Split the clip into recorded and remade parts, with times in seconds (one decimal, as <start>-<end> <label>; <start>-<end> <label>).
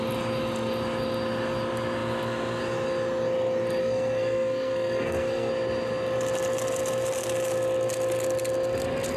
0.0-3.8 recorded; 3.8-5.5 remade; 5.5-9.2 recorded